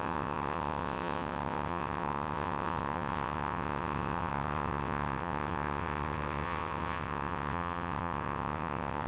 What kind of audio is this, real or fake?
fake